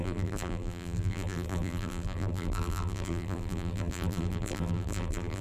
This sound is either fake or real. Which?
fake